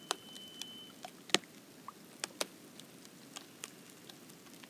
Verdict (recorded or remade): recorded